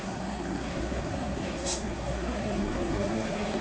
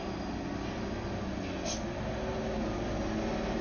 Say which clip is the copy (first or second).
first